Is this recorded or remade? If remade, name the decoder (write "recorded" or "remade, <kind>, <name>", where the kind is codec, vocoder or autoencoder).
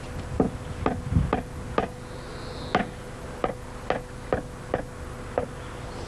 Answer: recorded